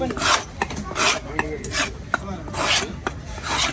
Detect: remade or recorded recorded